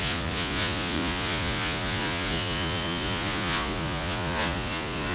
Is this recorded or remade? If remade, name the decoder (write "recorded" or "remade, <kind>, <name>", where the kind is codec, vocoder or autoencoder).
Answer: remade, vocoder, Vocos